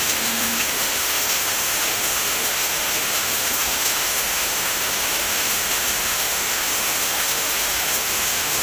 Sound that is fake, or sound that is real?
fake